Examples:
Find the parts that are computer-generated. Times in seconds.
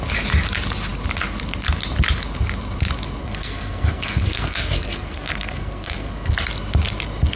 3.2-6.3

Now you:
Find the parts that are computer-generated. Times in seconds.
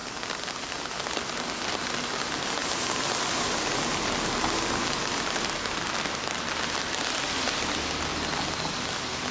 none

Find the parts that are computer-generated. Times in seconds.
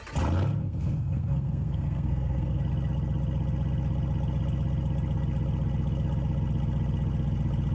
0.6-2.6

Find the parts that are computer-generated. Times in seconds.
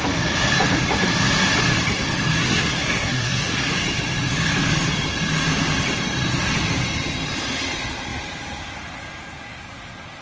2.4-3.7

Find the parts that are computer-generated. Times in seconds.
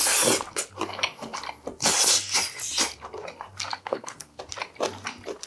3.7-4.4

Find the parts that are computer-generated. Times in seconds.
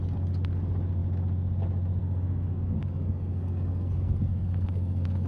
2.0-5.3